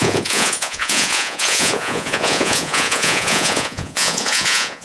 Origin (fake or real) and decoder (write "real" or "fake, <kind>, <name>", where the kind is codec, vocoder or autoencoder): fake, vocoder, Vocos